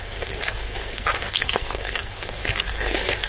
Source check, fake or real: fake